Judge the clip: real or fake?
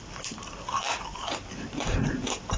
fake